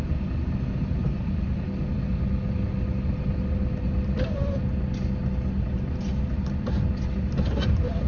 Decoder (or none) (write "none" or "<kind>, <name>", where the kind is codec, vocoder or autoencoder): none